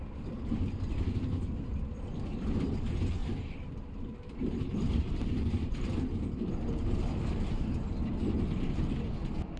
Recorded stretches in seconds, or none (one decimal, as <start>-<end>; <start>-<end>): 0.0-3.2; 6.5-9.6